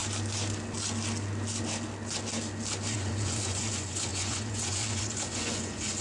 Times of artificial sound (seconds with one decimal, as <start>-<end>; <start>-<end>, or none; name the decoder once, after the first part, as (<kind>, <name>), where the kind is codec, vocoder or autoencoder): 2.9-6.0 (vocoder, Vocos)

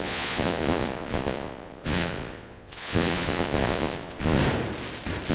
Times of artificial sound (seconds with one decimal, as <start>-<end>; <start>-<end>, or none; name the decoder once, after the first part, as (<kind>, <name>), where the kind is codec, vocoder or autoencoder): 0.0-4.4 (vocoder, Vocos)

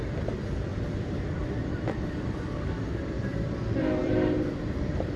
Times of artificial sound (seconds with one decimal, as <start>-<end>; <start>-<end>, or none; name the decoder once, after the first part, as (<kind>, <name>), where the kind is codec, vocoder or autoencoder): 0.7-3.6 (vocoder, BigVGAN v2); 4.0-5.2

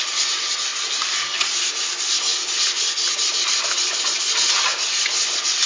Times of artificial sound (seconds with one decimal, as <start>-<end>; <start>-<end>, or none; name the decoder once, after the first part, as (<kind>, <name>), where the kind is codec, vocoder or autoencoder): none